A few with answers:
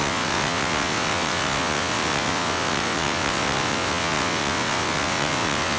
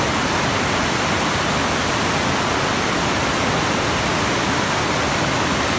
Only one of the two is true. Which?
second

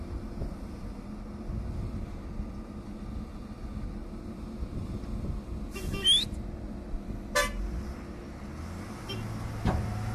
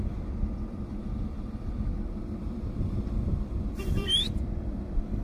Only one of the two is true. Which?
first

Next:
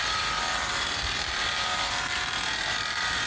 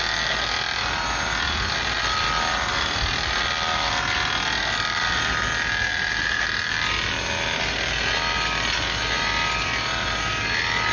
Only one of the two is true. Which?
second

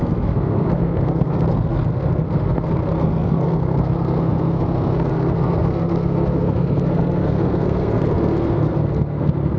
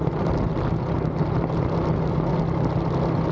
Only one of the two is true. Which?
second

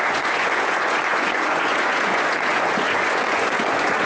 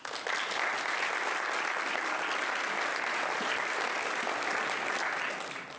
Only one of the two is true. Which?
second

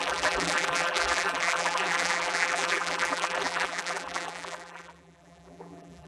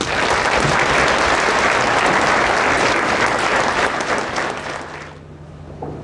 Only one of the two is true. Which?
second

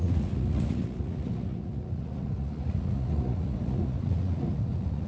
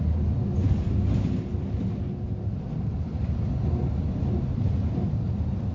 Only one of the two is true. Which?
second